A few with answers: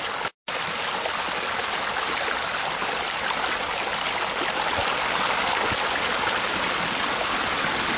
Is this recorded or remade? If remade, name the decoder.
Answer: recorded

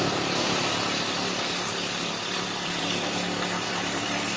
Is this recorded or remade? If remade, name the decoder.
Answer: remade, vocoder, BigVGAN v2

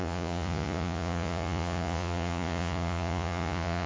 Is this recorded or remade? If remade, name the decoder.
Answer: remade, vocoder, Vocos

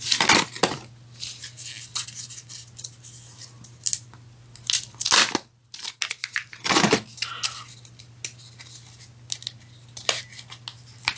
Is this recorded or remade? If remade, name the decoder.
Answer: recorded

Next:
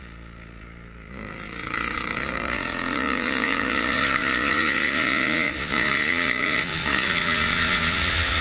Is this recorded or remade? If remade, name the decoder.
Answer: remade, vocoder, Vocos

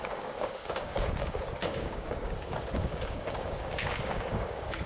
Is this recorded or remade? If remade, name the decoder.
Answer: remade, codec, DAC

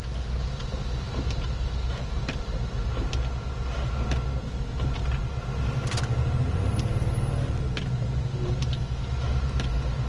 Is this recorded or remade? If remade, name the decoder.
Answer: recorded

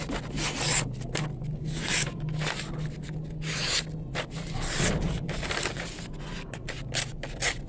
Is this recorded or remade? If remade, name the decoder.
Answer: recorded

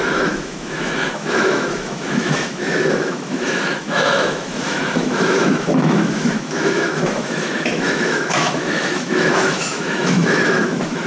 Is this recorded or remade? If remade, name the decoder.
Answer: remade, autoencoder, DAC-VAE